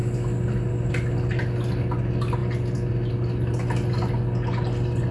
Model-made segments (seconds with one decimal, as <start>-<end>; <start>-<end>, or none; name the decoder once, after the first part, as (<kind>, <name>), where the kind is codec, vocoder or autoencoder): none